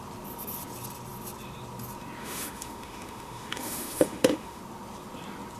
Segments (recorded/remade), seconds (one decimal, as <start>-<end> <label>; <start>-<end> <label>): 0.0-2.2 recorded; 2.2-4.6 remade; 4.6-5.6 recorded